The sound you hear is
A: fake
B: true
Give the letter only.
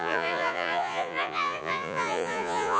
A